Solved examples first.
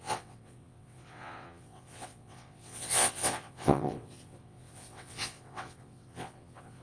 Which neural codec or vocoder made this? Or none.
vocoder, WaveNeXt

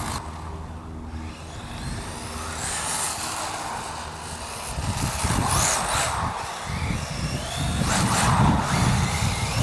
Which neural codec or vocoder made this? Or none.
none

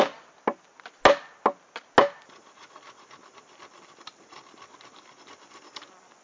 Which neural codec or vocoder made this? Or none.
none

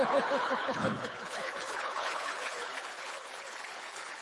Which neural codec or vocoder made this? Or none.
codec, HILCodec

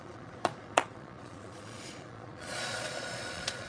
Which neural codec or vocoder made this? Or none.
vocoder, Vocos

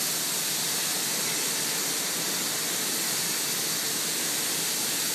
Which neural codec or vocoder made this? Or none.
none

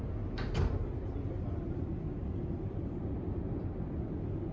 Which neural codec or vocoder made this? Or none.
none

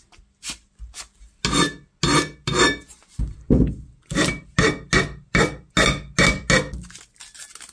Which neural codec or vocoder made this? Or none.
none